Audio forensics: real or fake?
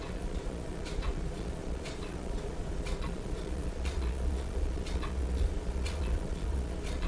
fake